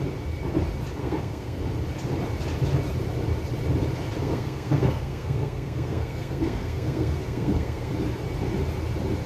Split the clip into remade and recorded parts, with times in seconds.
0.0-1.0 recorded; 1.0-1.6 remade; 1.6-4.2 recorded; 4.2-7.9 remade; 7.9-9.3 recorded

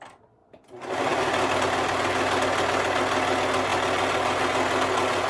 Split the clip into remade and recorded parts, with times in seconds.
0.0-5.3 recorded